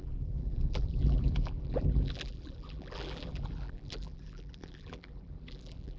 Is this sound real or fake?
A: fake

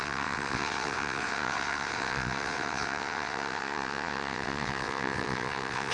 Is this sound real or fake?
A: fake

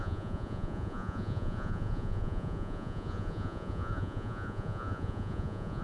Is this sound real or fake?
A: fake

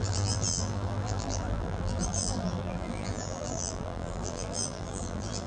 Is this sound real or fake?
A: fake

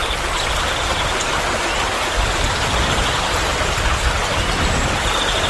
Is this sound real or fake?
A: real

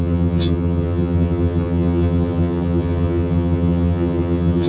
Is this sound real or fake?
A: fake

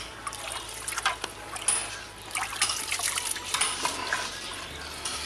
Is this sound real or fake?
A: real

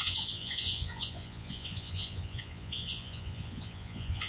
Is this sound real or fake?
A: fake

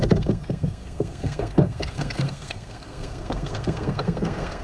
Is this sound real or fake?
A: fake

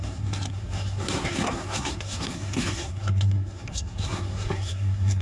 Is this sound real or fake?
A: fake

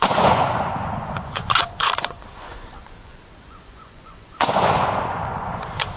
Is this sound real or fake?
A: fake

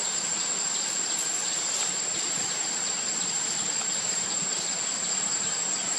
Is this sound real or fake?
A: fake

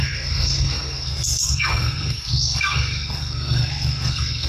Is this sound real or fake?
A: fake